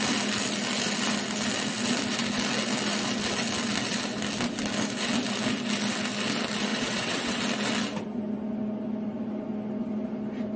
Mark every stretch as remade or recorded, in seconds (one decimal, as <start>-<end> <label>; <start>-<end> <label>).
0.0-6.7 recorded; 6.7-7.4 remade; 7.4-10.6 recorded